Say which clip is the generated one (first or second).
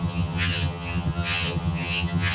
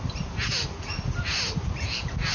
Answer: first